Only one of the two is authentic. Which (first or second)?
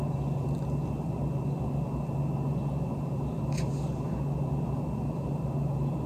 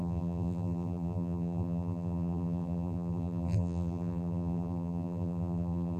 first